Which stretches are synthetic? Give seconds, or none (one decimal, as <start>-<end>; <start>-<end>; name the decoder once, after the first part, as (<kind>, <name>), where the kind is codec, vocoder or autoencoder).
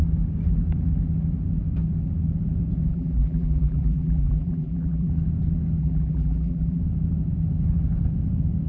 2.9-5.1 (vocoder, BigVGAN v2); 5.8-6.8